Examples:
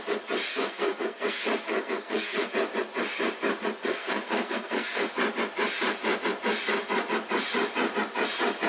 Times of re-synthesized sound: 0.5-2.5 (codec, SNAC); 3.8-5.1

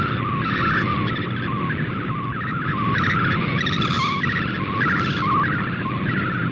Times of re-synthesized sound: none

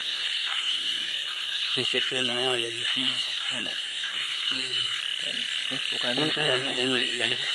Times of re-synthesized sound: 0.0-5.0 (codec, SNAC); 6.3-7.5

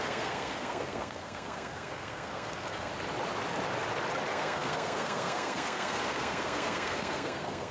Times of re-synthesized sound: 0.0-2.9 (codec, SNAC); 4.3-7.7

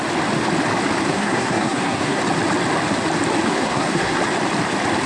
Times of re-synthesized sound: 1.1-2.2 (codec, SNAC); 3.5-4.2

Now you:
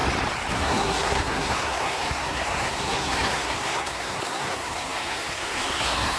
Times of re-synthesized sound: 0.5-6.2 (codec, SNAC)

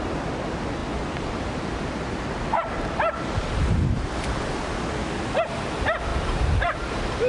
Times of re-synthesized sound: none